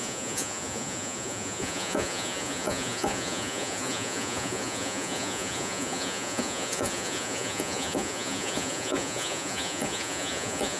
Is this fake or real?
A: fake